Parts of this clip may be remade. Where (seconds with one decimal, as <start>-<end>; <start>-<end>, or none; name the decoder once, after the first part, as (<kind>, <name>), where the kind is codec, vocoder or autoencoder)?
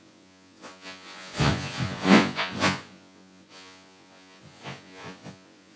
0.0-5.8 (vocoder, Vocos)